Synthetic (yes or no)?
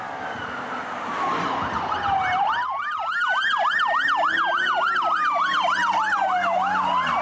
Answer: no